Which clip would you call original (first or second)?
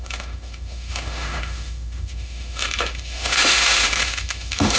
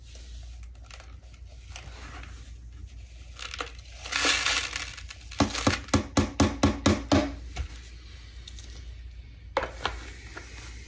second